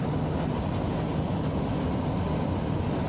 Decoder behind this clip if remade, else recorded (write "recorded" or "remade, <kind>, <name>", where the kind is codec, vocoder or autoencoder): recorded